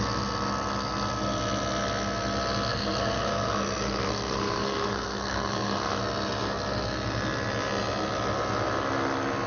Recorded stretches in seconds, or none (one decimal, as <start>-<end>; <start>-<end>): 0.0-2.7; 6.0-9.5